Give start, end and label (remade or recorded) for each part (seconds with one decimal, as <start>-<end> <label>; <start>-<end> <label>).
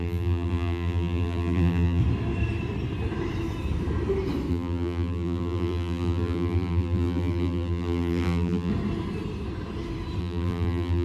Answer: 0.0-2.0 remade; 2.0-4.5 recorded; 4.5-8.7 remade; 8.7-10.2 recorded; 10.2-11.0 remade